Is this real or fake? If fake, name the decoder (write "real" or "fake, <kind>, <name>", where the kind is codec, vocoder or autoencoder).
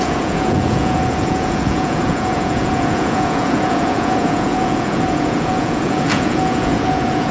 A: fake, vocoder, Vocos